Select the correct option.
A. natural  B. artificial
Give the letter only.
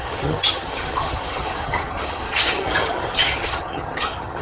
B